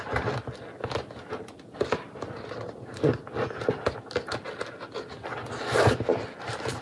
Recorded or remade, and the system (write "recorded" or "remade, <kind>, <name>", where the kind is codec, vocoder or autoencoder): recorded